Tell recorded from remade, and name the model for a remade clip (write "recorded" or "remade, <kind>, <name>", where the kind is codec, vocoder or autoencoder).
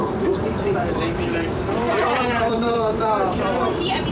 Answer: remade, vocoder, BigVGAN v2